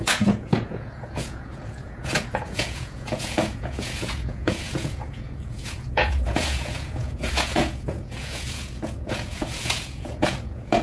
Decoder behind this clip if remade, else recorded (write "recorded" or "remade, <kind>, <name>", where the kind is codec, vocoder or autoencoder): remade, vocoder, Vocos